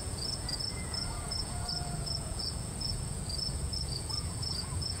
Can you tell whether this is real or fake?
fake